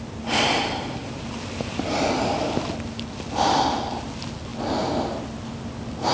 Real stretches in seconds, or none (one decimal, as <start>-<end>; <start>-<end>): 0.0-6.1